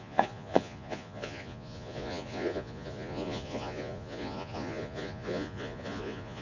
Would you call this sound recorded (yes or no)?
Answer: no